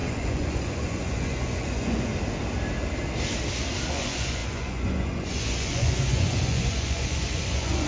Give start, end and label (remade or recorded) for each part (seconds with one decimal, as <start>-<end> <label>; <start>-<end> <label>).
0.0-2.1 remade; 2.1-3.9 recorded; 3.9-7.9 remade